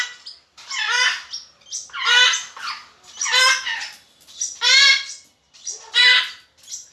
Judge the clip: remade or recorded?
recorded